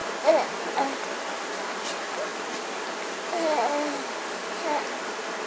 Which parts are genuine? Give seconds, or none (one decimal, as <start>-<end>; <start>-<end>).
0.0-5.5